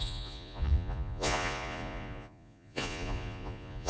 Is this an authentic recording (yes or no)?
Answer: no